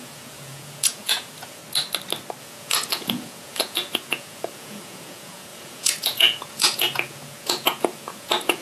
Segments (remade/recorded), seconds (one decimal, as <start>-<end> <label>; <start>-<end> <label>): 0.0-1.6 remade; 1.6-2.4 recorded; 2.4-8.6 remade